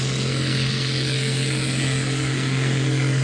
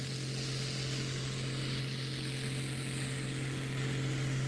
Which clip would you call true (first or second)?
second